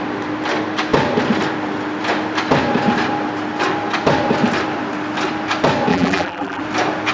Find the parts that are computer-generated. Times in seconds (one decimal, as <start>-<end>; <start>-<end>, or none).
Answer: 5.9-6.6